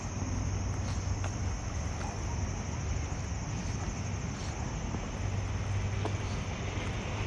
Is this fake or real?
real